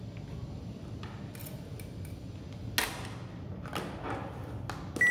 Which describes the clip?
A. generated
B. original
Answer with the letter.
B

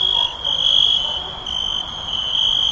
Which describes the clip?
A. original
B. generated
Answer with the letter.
A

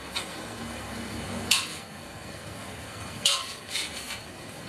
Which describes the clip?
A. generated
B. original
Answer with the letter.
A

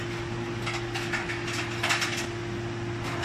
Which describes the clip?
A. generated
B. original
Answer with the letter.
B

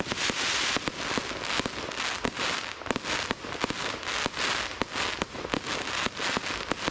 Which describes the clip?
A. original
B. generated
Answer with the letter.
A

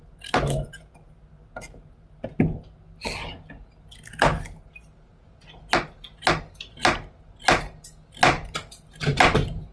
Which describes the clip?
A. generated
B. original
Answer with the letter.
B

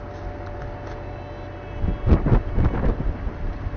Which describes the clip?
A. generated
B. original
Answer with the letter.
B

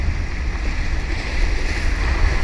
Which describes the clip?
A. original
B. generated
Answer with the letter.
A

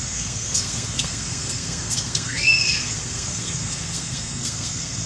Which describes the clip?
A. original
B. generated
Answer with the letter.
B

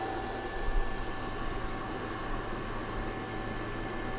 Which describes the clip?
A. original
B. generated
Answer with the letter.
A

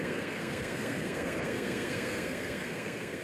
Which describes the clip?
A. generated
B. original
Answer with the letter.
A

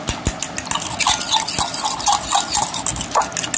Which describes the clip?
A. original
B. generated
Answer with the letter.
A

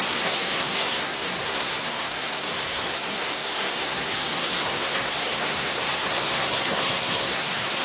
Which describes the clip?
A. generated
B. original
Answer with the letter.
A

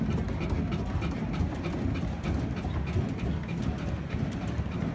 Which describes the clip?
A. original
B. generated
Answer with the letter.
A